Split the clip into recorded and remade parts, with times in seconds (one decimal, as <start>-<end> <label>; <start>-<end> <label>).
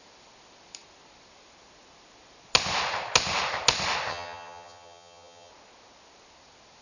0.0-4.1 recorded; 4.1-5.5 remade; 5.5-6.8 recorded